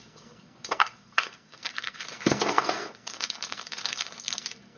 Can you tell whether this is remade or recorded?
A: remade